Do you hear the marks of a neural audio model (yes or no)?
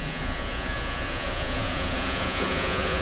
yes